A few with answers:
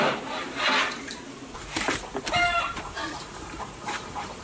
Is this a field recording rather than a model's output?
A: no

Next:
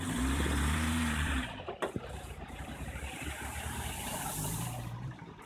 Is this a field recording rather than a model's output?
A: no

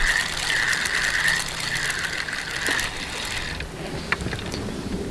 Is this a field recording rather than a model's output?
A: yes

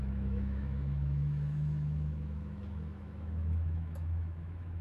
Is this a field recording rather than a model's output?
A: no